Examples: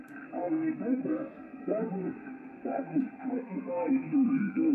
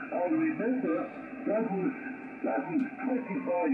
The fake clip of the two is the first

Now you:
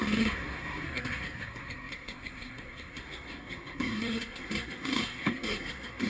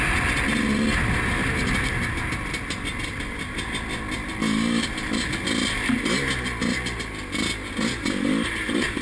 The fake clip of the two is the first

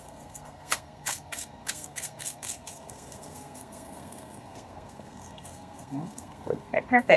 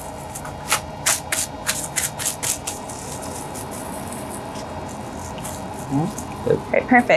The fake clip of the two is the first